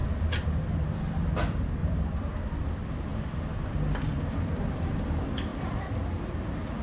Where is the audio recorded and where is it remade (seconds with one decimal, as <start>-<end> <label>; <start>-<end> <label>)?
0.0-1.8 recorded; 1.8-2.3 remade; 2.3-3.1 recorded; 3.1-4.9 remade; 4.9-5.5 recorded; 5.5-6.3 remade; 6.3-6.8 recorded